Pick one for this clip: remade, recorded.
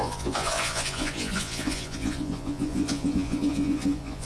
remade